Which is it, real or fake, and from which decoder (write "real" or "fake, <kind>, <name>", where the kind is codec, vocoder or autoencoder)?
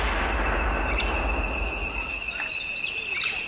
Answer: real